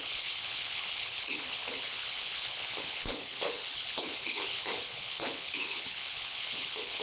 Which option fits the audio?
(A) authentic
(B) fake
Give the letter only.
B